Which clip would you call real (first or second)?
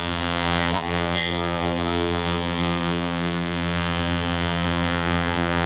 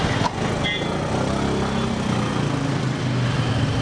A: second